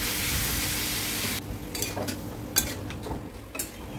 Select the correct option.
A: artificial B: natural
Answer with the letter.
B